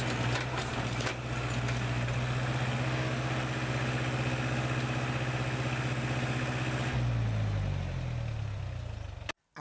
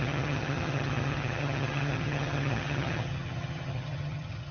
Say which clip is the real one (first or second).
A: first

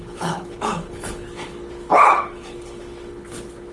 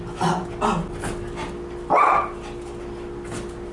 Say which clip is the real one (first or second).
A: second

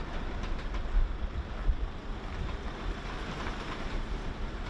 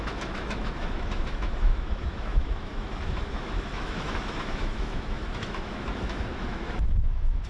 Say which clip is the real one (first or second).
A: first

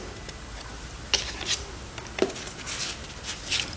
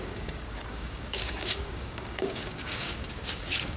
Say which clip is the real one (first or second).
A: first